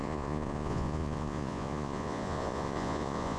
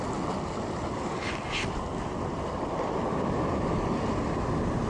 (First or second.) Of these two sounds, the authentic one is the second